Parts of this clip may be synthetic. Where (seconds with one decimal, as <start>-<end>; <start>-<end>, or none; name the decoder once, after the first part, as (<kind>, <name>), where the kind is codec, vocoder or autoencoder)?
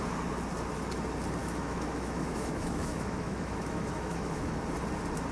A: 1.4-4.6 (autoencoder, DAC-VAE)